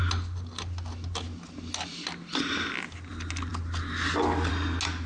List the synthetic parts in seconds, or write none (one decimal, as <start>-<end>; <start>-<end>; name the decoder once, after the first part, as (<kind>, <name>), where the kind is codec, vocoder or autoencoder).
none